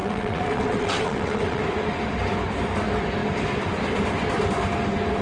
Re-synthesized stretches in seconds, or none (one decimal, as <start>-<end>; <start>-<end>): 0.0-1.6